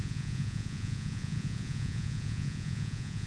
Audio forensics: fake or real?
fake